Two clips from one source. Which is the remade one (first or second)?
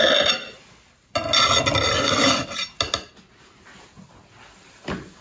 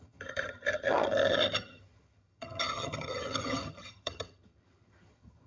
second